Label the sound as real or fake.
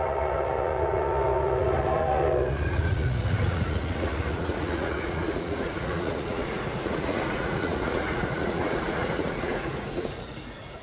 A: fake